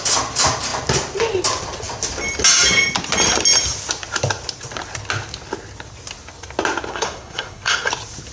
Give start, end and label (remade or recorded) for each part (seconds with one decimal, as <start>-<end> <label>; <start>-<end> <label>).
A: 0.0-6.9 recorded; 6.9-7.9 remade; 7.9-8.3 recorded